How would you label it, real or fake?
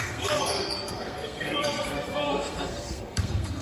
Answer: fake